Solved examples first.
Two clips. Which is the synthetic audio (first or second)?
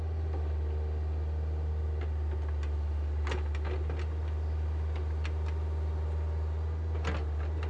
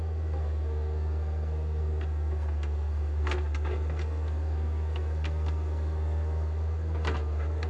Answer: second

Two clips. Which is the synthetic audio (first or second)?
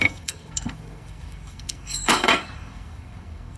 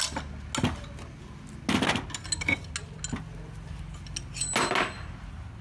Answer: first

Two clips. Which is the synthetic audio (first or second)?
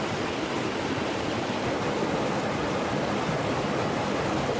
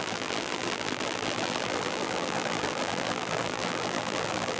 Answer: second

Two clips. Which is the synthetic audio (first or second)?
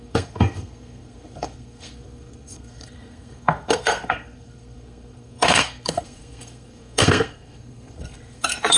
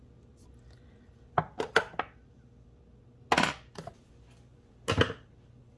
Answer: first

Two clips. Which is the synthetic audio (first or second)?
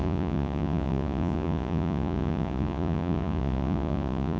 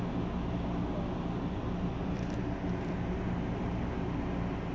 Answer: first